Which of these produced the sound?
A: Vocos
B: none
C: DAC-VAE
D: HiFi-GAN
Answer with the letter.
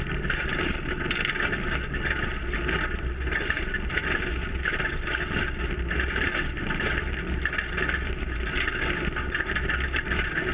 B